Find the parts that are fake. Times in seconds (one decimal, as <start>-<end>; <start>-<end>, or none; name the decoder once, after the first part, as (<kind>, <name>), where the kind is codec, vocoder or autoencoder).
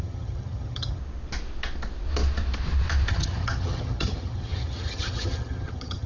0.0-1.0 (vocoder, HiFi-GAN); 3.1-6.1